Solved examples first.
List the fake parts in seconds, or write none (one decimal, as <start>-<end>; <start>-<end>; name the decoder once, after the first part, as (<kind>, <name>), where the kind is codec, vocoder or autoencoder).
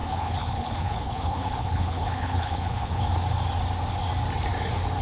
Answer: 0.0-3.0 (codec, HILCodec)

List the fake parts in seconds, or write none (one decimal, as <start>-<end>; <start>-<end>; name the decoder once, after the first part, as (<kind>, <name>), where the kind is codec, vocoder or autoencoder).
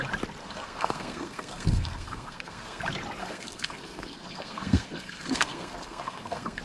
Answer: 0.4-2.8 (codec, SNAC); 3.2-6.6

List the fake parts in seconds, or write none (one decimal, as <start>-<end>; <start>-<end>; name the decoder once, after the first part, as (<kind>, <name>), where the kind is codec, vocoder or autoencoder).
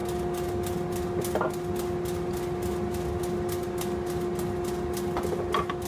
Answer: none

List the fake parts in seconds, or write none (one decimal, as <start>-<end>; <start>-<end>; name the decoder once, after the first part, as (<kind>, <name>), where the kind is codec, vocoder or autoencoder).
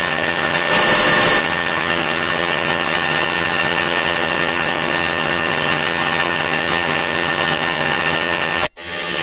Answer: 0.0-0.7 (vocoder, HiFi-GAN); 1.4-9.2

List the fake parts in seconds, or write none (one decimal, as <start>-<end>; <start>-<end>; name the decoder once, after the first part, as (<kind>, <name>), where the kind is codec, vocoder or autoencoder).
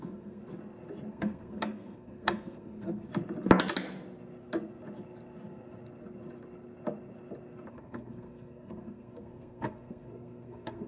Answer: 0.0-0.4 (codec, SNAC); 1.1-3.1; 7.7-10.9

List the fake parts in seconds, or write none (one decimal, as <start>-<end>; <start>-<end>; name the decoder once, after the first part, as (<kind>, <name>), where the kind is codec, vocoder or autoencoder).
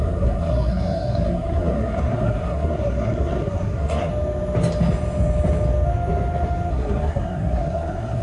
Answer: 0.0-4.1 (codec, SNAC); 6.7-8.2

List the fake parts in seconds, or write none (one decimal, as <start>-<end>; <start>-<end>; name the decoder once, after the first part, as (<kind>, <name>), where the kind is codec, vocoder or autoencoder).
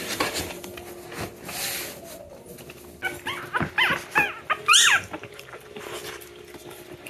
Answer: 0.0-0.7 (vocoder, BigVGAN v2); 4.6-7.1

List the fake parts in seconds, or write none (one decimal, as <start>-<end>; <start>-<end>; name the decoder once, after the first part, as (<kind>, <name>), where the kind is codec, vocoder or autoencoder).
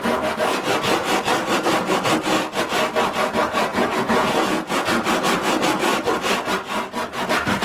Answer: 3.7-4.9 (vocoder, Vocos)